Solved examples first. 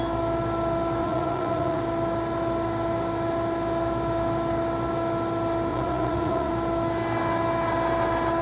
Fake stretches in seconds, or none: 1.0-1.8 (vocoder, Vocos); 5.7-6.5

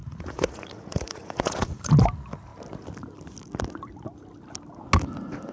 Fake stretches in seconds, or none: 0.0-1.9 (vocoder, Vocos)

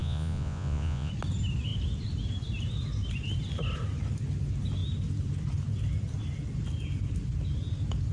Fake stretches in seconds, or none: 0.0-1.1 (vocoder, Vocos)